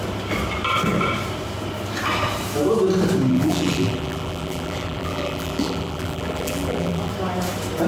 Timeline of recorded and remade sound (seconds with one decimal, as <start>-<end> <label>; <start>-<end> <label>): 0.0-3.3 recorded; 3.3-7.1 remade; 7.1-7.9 recorded